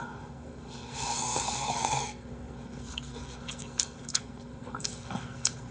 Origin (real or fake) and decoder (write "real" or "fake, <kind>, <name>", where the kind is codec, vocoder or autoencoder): fake, codec, SNAC